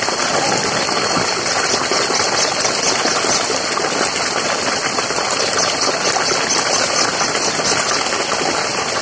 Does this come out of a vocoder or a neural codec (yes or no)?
no